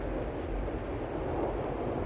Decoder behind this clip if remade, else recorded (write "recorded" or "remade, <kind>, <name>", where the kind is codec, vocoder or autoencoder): recorded